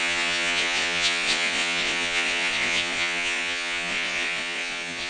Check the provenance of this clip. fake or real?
fake